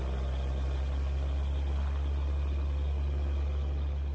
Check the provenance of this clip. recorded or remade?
recorded